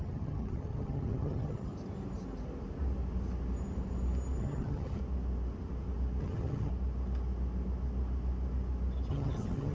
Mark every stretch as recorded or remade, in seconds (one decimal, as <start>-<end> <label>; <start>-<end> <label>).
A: 0.0-1.7 remade; 1.7-4.4 recorded; 4.4-5.0 remade; 5.0-6.2 recorded; 6.2-6.7 remade; 6.7-9.1 recorded; 9.1-9.7 remade

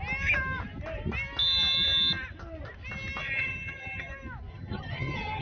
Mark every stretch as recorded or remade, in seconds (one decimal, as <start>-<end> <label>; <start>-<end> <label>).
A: 0.0-3.2 recorded; 3.2-4.1 remade; 4.1-4.5 recorded; 4.5-5.4 remade

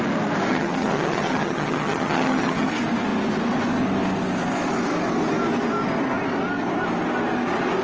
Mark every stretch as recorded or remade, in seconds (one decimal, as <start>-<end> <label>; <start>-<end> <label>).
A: 0.0-0.5 recorded; 0.5-2.7 remade; 2.7-7.8 recorded

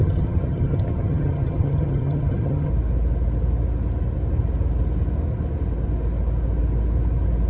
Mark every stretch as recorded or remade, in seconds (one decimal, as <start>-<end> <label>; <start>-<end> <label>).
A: 0.0-2.7 remade; 2.7-7.5 recorded

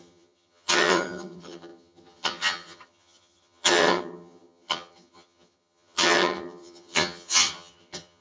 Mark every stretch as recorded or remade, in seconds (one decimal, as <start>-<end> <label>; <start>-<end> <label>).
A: 0.0-8.2 remade

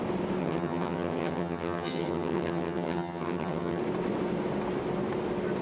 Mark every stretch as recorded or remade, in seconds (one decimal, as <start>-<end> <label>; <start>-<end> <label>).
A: 0.0-0.4 recorded; 0.4-3.8 remade; 3.8-5.6 recorded

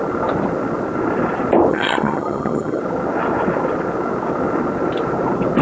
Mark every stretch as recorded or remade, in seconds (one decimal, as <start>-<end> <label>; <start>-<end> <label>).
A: 0.0-1.7 recorded; 1.7-2.8 remade; 2.8-5.6 recorded